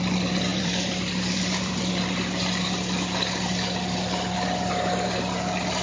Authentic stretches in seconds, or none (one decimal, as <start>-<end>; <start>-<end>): 0.0-0.5; 1.8-5.8